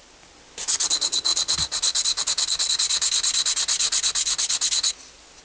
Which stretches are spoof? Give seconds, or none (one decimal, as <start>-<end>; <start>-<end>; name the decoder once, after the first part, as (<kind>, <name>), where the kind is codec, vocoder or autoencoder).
none